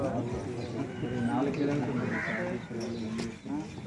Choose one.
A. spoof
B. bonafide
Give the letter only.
B